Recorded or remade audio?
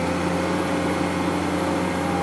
recorded